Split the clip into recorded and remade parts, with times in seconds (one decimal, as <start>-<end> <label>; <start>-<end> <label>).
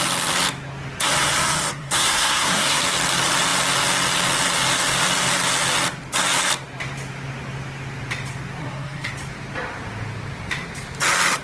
0.0-1.7 recorded; 1.7-2.8 remade; 2.8-8.6 recorded; 8.6-9.1 remade; 9.1-11.4 recorded